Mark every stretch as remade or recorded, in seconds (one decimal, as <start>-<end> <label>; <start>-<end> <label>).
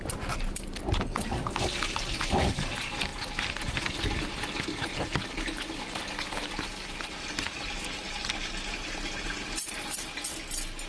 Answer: 0.0-10.9 recorded